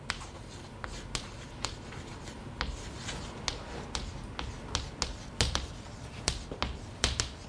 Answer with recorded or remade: recorded